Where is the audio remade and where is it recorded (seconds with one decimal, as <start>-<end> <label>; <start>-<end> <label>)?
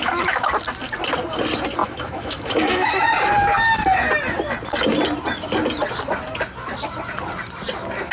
0.0-0.5 remade; 0.5-1.8 recorded; 1.8-2.9 remade; 2.9-8.1 recorded